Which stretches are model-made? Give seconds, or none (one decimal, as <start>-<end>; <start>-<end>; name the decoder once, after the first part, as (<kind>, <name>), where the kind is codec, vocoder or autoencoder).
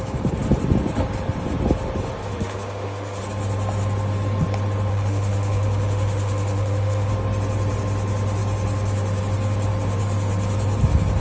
2.2-3.2 (autoencoder, DAC-VAE); 4.9-7.1